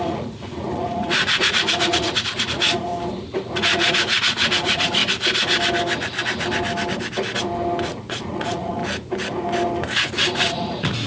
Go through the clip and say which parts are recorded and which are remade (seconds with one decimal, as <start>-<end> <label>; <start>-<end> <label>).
0.0-2.9 remade; 2.9-3.5 recorded; 3.5-5.0 remade; 5.0-8.1 recorded; 8.1-8.8 remade; 8.8-10.0 recorded; 10.0-11.1 remade